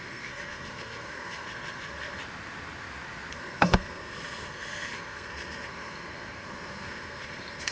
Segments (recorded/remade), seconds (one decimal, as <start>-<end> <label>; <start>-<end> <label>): 0.0-2.2 remade; 2.2-3.3 recorded; 3.3-7.7 remade